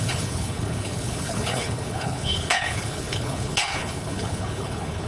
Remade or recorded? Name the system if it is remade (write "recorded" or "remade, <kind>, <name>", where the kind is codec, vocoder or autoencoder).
remade, codec, HILCodec